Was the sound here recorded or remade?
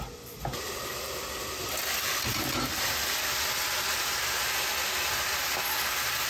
recorded